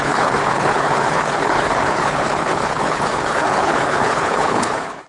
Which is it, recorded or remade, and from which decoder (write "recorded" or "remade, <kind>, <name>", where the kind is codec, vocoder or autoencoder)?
remade, codec, HILCodec